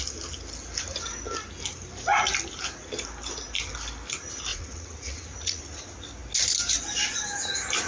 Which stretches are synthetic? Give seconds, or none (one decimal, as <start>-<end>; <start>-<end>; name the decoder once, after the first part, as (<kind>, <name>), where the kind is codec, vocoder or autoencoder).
4.5-5.6 (vocoder, Vocos)